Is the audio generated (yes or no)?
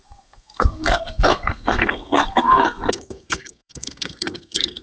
yes